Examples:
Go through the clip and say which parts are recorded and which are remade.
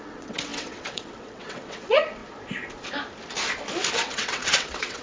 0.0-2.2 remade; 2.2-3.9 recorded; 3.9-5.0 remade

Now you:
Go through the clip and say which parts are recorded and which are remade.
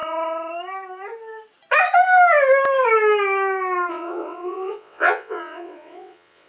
0.0-3.9 recorded; 3.9-6.5 remade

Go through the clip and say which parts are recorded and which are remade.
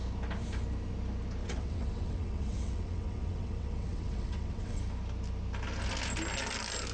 0.0-1.4 recorded; 1.4-4.8 remade; 4.8-6.9 recorded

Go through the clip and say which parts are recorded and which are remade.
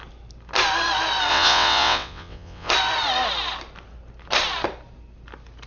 0.0-1.3 recorded; 1.3-2.7 remade; 2.7-5.7 recorded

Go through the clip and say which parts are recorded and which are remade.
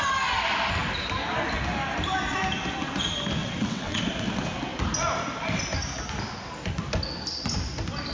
0.0-3.4 recorded; 3.4-4.0 remade; 4.0-8.1 recorded